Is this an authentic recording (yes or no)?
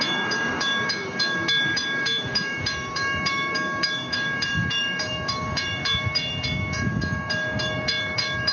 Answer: no